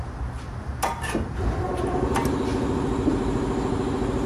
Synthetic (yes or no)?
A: no